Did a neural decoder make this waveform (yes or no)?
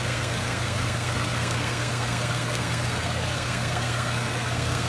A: yes